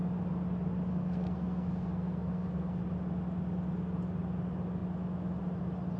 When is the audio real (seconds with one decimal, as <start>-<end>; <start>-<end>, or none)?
0.0-0.9; 2.8-6.0